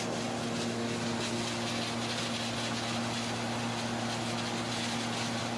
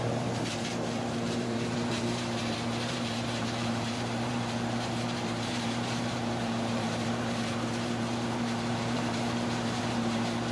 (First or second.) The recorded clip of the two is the first